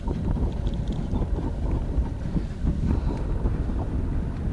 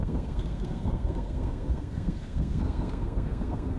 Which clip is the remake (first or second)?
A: second